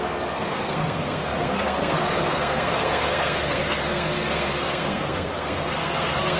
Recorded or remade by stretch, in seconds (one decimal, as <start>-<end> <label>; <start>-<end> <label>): 0.0-6.4 remade